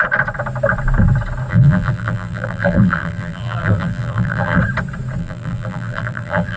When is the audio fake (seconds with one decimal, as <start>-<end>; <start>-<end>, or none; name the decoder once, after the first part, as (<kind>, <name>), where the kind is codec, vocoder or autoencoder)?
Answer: 1.5-4.6 (vocoder, BigVGAN v2); 5.2-6.6